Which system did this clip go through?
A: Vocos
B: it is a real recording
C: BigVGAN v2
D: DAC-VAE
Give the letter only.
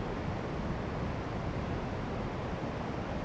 B